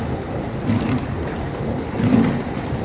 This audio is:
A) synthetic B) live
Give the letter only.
B